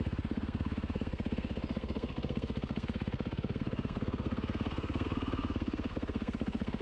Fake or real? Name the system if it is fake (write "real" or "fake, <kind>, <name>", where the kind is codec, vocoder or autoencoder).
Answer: fake, codec, SNAC